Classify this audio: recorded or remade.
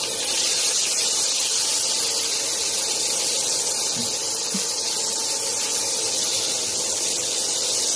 recorded